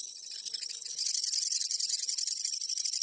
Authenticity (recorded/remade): recorded